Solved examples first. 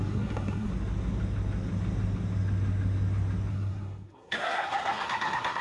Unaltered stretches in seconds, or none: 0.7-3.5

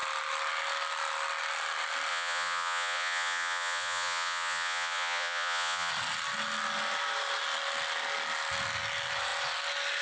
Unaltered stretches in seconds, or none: 0.0-2.1; 5.9-10.0

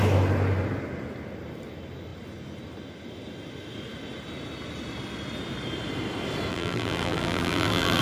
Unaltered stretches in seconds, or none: 0.0-6.5

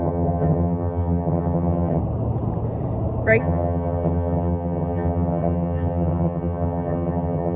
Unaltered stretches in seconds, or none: 2.0-3.4

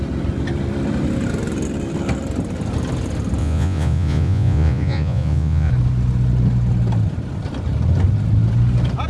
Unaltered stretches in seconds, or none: 0.0-3.4; 5.7-9.1

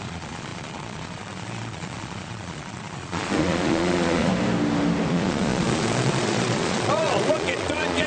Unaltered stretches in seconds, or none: 4.3-5.1